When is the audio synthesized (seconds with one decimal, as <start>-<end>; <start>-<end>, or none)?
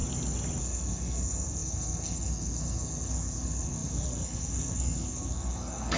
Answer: 0.6-6.0